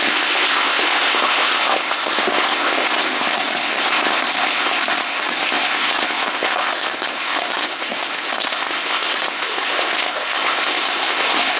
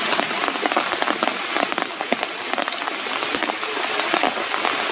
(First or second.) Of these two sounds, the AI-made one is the first